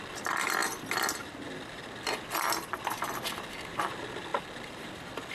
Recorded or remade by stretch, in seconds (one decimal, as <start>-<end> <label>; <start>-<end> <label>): 0.0-5.3 recorded